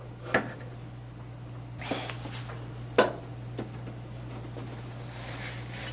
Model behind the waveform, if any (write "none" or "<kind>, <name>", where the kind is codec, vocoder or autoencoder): none